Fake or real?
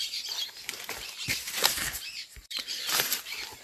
fake